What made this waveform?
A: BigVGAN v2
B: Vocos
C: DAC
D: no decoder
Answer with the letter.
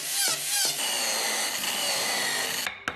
D